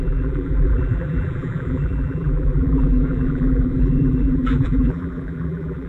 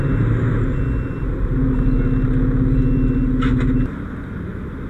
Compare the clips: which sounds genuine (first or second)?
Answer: second